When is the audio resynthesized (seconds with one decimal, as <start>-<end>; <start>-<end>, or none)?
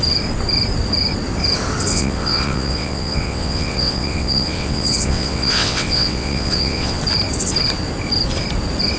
1.9-7.0